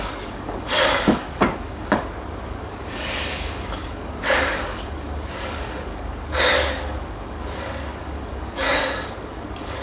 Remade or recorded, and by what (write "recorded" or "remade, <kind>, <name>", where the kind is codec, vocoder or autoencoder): remade, codec, DAC